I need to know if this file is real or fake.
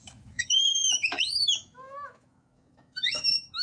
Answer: fake